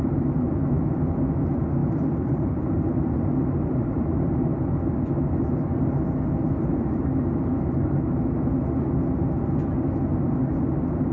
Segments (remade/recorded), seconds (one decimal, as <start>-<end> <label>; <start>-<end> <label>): 0.0-1.8 recorded; 1.8-2.6 remade; 2.6-3.3 recorded; 3.3-4.3 remade; 4.3-11.1 recorded